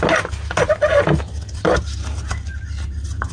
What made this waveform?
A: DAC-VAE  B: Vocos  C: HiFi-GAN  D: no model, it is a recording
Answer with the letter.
D